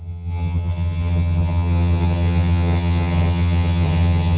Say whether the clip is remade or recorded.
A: remade